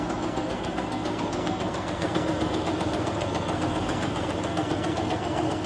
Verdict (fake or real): fake